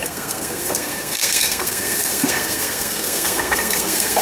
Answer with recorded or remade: remade